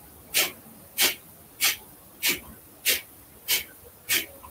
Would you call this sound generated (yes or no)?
no